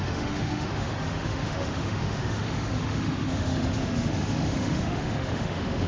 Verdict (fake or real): fake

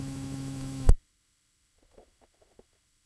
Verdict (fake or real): fake